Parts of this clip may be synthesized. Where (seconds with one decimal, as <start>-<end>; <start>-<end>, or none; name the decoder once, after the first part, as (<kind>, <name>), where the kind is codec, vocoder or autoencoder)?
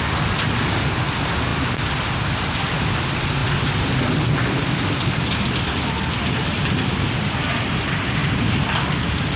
0.0-1.5 (vocoder, BigVGAN v2); 2.3-8.2; 8.9-9.4